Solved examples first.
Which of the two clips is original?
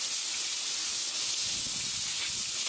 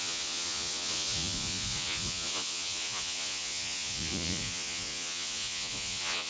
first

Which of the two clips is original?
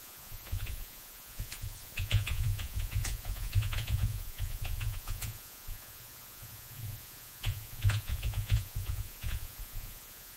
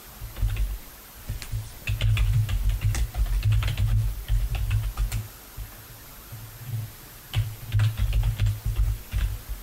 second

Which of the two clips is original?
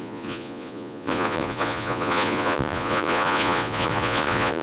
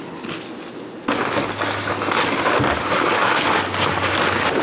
second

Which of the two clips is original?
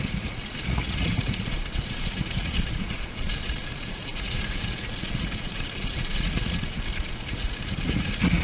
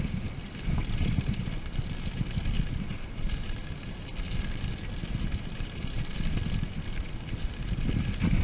second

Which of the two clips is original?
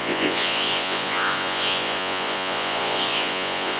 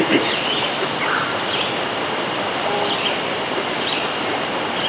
second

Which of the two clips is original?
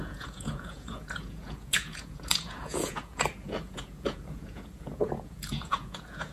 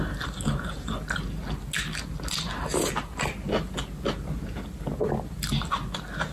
second